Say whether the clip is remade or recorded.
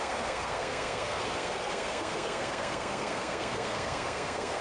remade